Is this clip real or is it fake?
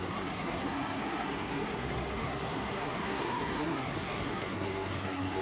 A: fake